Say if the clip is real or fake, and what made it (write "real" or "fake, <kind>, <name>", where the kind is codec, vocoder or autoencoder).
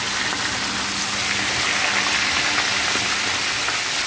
real